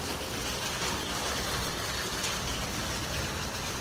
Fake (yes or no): no